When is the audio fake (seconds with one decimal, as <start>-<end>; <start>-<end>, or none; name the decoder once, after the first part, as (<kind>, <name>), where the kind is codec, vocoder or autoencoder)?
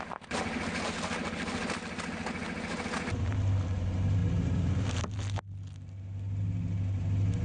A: none